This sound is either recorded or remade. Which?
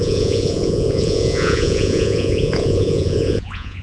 remade